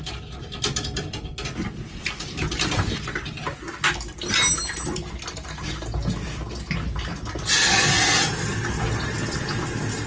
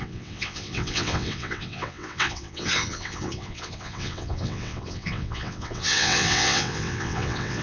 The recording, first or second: first